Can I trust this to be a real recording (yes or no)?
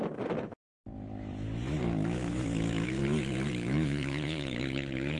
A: no